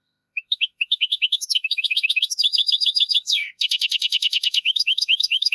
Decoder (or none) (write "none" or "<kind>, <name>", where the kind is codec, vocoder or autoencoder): autoencoder, DAC-VAE